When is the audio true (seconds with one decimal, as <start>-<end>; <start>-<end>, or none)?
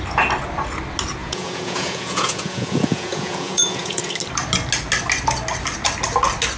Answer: 0.0-1.2; 4.1-6.6